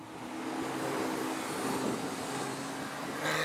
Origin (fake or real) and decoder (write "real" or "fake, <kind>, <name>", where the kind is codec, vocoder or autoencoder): real